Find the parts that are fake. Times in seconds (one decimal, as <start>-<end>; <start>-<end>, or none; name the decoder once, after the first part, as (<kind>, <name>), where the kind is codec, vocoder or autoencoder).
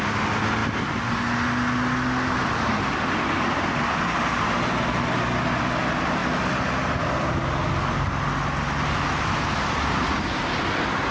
none